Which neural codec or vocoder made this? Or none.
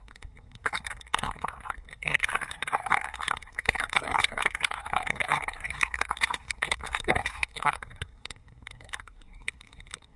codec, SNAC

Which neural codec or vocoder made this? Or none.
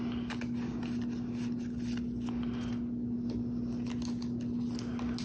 none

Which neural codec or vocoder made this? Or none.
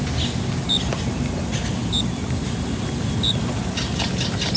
none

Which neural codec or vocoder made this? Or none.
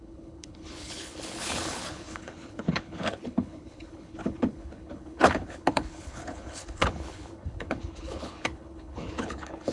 codec, HILCodec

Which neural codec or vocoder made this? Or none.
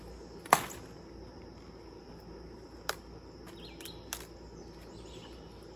none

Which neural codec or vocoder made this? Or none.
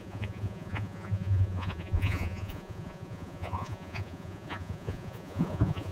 vocoder, Vocos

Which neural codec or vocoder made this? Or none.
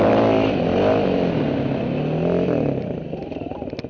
none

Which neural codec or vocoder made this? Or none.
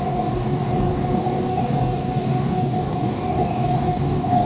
codec, DAC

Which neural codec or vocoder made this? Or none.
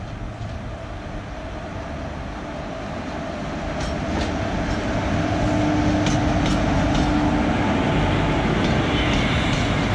none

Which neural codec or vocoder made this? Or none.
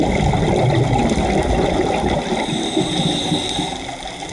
none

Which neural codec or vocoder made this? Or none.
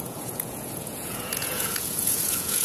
vocoder, Vocos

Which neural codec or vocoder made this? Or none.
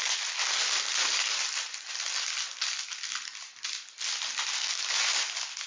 none